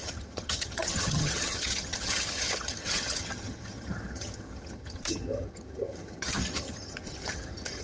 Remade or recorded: remade